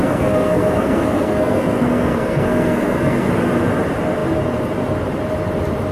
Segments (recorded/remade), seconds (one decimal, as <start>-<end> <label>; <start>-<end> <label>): 0.0-3.3 remade; 3.3-5.9 recorded